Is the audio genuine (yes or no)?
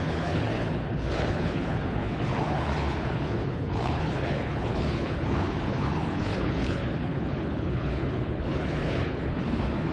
no